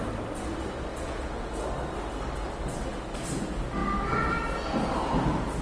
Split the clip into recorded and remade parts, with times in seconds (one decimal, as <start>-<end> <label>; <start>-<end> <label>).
0.0-0.9 recorded; 0.9-1.7 remade; 1.7-5.6 recorded